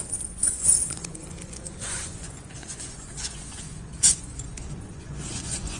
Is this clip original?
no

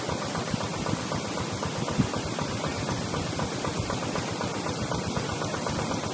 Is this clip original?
no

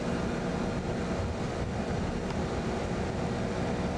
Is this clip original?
yes